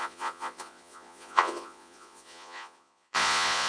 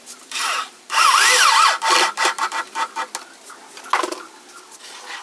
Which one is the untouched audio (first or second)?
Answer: second